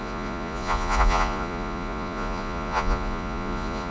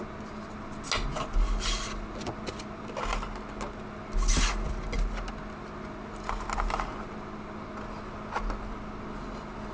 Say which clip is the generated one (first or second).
first